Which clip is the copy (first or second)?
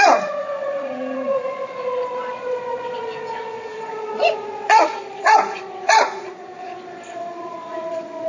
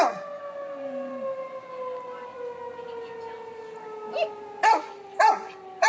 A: first